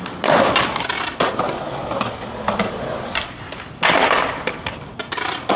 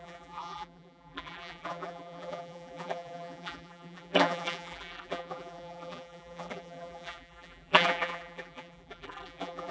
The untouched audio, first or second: first